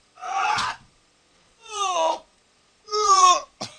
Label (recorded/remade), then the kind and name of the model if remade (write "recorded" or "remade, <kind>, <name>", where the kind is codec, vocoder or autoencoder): remade, vocoder, Vocos